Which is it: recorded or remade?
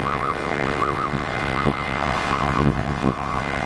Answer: remade